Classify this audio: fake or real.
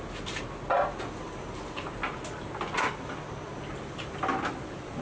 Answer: real